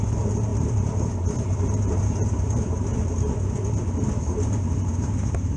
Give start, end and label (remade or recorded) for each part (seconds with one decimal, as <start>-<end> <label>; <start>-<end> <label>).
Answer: 0.0-2.9 remade; 2.9-4.8 recorded; 4.8-5.6 remade